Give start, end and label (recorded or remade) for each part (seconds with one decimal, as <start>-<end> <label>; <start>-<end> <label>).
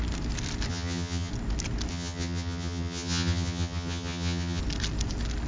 0.0-0.7 recorded; 0.7-1.3 remade; 1.3-1.9 recorded; 1.9-4.6 remade; 4.6-5.5 recorded